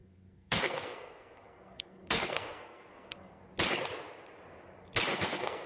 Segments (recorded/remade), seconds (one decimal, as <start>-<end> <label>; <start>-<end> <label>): 0.0-3.4 remade; 3.4-5.1 recorded; 5.1-5.7 remade